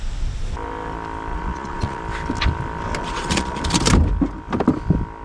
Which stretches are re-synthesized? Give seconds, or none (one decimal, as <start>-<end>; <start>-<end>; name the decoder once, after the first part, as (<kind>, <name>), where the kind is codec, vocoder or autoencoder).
1.3-2.0 (vocoder, Vocos); 3.0-3.6